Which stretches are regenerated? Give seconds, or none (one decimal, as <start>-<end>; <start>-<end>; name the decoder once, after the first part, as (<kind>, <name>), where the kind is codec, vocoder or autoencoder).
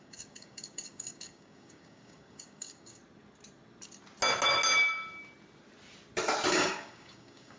0.0-3.0 (codec, DAC); 6.5-7.6